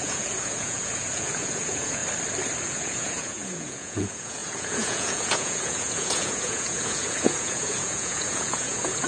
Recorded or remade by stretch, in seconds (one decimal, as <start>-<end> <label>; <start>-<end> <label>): 0.0-2.0 remade; 2.0-2.6 recorded; 2.6-9.1 remade